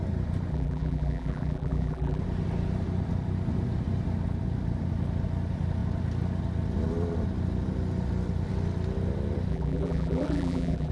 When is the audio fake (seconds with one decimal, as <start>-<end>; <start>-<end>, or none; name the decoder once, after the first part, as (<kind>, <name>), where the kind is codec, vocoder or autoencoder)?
0.5-2.2 (vocoder, BigVGAN v2); 9.5-10.9